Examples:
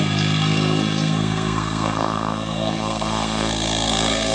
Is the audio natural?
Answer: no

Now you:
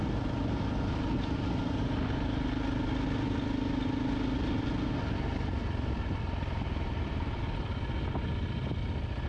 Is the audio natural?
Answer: yes